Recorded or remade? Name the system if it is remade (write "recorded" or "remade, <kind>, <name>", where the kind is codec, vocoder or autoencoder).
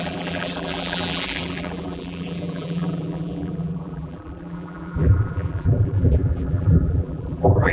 remade, vocoder, BigVGAN v2